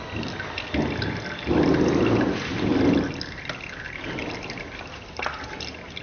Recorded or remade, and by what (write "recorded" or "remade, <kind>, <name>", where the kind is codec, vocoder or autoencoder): recorded